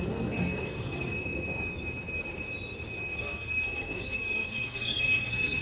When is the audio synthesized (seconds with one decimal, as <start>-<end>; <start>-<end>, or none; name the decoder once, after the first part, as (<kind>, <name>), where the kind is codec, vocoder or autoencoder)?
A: 0.0-1.2 (codec, SNAC); 3.2-5.6